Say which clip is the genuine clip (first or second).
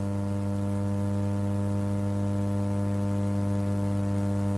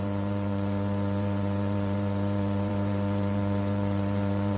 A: first